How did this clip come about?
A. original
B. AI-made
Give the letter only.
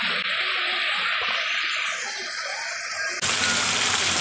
A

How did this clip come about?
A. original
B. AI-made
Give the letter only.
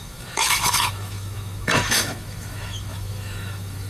B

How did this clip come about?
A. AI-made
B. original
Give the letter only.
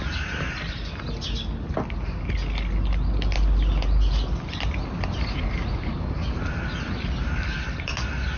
B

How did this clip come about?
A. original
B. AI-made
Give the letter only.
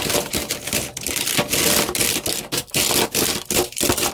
A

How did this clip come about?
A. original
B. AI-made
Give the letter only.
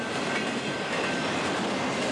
A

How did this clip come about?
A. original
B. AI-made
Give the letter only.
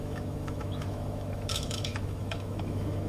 B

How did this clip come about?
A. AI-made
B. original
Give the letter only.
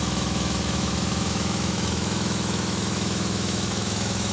A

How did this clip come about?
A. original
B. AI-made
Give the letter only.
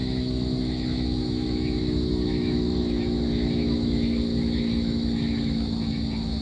B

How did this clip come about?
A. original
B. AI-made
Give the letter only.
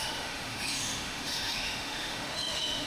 B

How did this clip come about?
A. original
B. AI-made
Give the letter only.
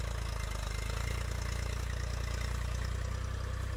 A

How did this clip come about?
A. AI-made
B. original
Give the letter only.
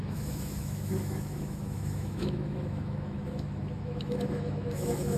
A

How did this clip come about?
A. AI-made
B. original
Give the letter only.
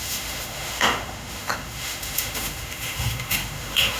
A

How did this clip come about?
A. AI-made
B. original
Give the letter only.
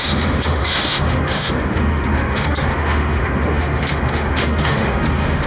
A